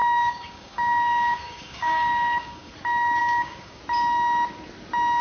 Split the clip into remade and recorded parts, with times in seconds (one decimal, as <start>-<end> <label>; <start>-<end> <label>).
0.0-2.7 remade; 2.7-3.2 recorded; 3.2-3.8 remade; 3.8-5.2 recorded